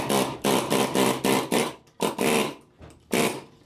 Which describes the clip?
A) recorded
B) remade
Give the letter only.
B